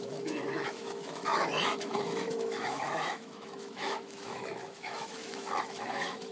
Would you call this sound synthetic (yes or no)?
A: yes